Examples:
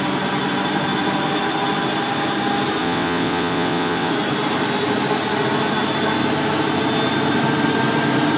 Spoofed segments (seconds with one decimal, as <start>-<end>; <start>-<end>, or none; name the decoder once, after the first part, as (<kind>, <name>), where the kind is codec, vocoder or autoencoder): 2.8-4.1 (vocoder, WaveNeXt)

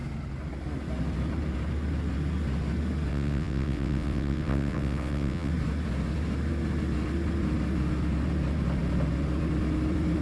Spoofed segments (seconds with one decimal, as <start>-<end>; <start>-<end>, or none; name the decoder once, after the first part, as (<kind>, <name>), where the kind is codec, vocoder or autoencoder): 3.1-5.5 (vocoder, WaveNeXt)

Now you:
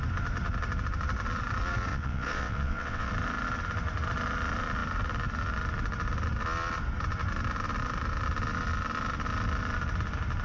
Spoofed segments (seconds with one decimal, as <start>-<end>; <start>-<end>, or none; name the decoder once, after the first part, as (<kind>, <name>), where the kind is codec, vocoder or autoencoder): 1.9-3.1 (vocoder, WaveNeXt)

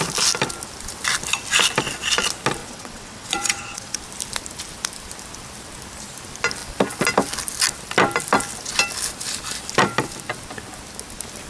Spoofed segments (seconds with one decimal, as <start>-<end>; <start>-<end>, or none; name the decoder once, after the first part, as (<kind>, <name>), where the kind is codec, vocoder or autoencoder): 2.6-4.0 (vocoder, WaveNeXt)